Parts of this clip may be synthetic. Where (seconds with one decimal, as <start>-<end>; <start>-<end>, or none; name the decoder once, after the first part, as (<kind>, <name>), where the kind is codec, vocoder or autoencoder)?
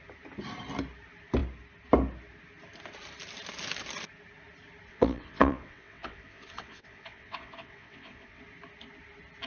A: 4.9-8.4 (vocoder, WaveNeXt)